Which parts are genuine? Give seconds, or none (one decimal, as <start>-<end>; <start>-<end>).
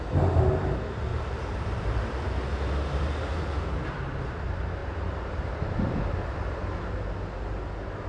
0.0-1.1; 2.2-8.1